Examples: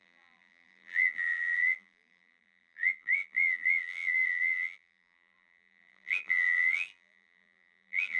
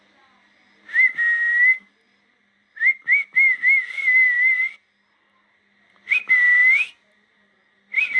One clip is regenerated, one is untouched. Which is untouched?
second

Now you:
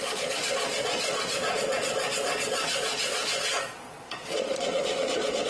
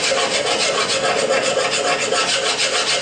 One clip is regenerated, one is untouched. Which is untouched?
second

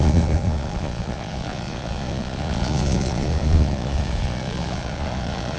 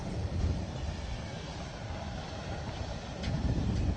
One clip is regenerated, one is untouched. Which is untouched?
second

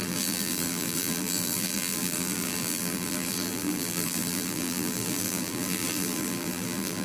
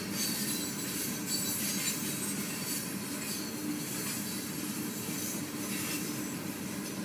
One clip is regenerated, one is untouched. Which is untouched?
second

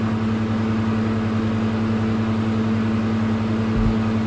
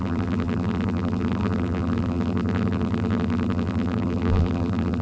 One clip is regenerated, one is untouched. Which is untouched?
first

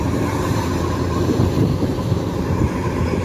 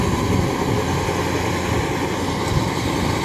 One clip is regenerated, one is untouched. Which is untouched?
second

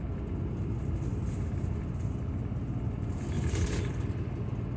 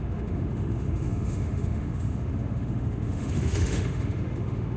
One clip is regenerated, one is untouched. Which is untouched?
first